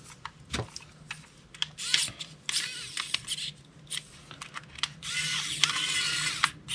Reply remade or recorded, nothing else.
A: recorded